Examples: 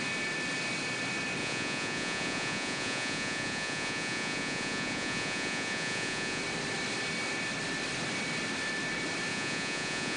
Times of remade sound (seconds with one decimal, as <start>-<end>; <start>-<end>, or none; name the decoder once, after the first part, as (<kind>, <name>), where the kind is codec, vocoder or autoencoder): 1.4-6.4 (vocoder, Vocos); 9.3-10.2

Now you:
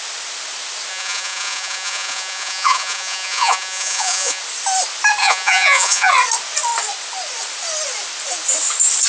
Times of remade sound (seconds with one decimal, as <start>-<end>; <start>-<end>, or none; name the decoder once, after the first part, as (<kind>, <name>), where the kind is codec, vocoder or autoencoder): 0.9-4.4 (vocoder, Vocos); 5.2-6.1

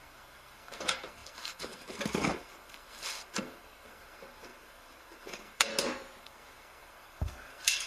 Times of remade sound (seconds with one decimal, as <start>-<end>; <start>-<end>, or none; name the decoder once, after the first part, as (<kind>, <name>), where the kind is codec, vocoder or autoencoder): 0.0-5.7 (codec, SNAC); 6.2-7.9

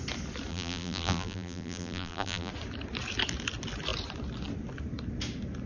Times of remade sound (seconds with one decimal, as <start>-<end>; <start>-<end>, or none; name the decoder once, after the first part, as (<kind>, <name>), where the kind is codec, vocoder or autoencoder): 0.5-2.5 (vocoder, BigVGAN v2)